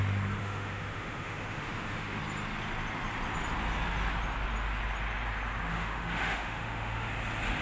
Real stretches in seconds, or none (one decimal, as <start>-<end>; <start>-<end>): 0.0-0.4; 2.2-5.7; 7.1-7.6